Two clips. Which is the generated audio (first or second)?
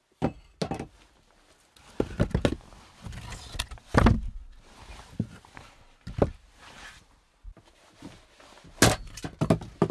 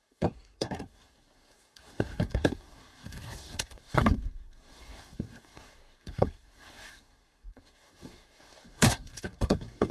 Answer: second